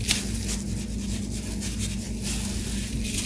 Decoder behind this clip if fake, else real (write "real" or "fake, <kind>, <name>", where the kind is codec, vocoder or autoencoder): real